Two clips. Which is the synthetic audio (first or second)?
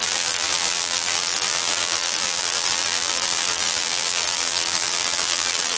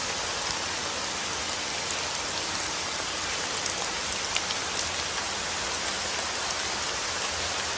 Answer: first